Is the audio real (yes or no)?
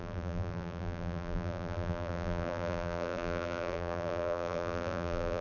no